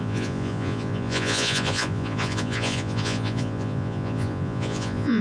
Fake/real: fake